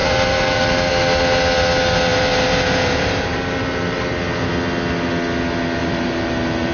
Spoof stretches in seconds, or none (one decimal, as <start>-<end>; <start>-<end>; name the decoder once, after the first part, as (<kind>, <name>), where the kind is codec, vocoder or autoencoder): 0.0-0.9 (vocoder, BigVGAN v2); 2.1-4.5; 5.8-6.7

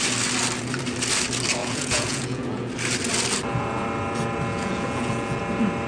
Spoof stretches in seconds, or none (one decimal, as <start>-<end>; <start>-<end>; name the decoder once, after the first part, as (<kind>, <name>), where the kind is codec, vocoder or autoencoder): 1.6-2.7 (vocoder, Vocos); 4.5-5.4